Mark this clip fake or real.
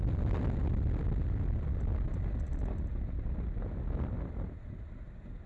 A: real